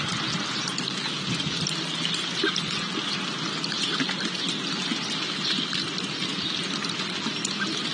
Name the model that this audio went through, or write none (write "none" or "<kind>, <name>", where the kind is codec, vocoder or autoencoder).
none